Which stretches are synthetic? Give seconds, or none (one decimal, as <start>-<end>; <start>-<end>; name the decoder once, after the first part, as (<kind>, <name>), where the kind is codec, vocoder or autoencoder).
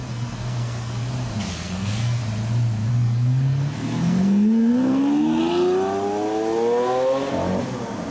0.0-1.1 (codec, SNAC); 1.5-2.2; 2.9-5.4